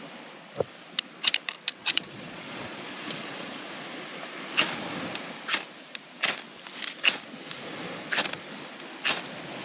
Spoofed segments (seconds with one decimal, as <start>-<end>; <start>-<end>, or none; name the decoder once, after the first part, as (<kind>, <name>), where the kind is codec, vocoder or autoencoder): 1.7-3.7 (vocoder, Vocos)